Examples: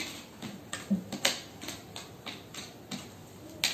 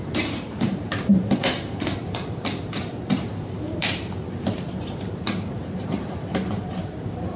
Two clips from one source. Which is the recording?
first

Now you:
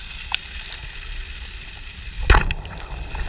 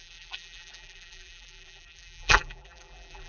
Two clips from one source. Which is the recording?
first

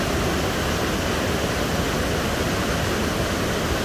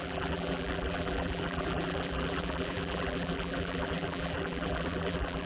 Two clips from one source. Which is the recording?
first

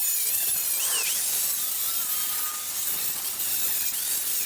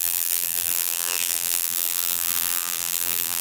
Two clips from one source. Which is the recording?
first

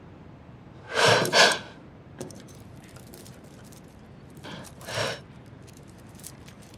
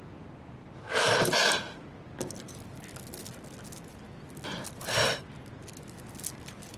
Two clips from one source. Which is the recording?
second